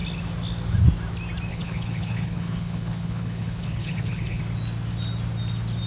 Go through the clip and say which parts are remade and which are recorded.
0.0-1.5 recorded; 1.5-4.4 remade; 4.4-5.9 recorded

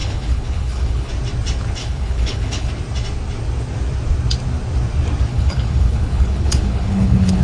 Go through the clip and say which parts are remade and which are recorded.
0.0-1.1 remade; 1.1-1.8 recorded; 1.8-2.7 remade; 2.7-5.3 recorded; 5.3-7.4 remade

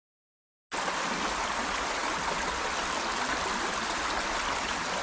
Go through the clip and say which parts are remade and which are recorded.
0.0-5.0 recorded

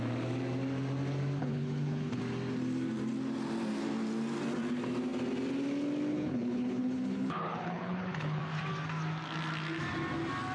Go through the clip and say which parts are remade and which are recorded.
0.0-1.4 recorded; 1.4-2.2 remade; 2.2-6.1 recorded; 6.1-8.4 remade; 8.4-10.5 recorded

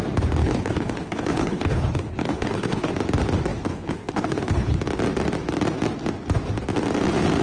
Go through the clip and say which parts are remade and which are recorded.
0.0-0.4 recorded; 0.4-2.9 remade; 2.9-3.5 recorded; 3.5-4.8 remade; 4.8-7.4 recorded

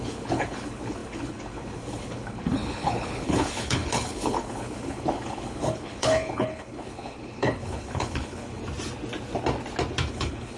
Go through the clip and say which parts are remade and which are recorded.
0.0-8.6 remade; 8.6-10.1 recorded; 10.1-10.6 remade